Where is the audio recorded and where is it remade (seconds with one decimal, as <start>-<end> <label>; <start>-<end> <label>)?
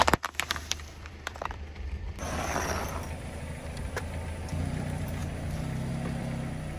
0.0-5.2 remade; 5.2-5.9 recorded; 5.9-6.8 remade